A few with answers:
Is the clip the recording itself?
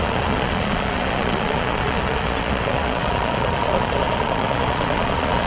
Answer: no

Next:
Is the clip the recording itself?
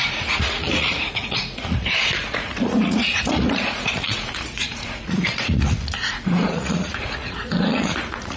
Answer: no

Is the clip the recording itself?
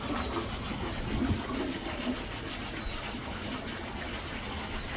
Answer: yes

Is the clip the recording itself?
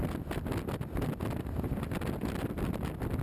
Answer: yes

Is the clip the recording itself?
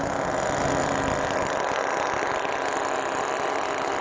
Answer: yes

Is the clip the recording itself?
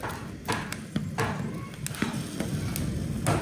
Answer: yes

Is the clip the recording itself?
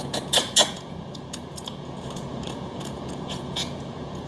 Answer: no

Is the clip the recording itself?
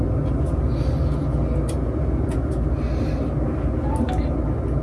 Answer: yes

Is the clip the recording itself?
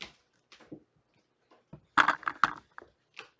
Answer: yes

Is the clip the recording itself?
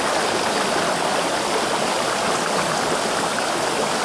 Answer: yes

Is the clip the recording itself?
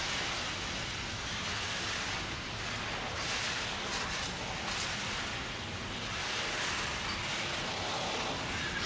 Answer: yes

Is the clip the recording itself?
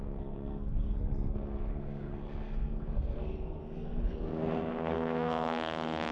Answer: no